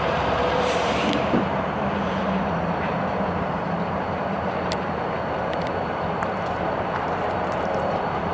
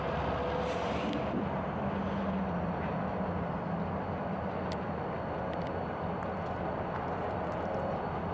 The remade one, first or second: first